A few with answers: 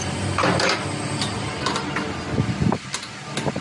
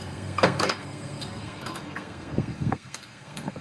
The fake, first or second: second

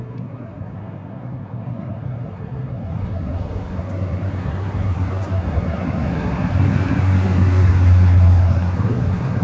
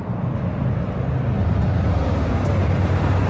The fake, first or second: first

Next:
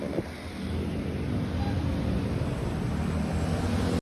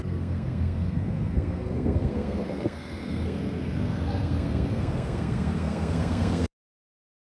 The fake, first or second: second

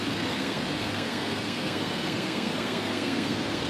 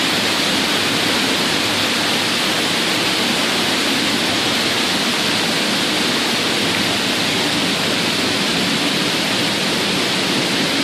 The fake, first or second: first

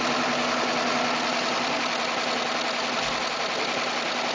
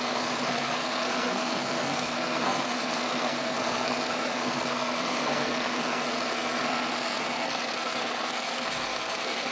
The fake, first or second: second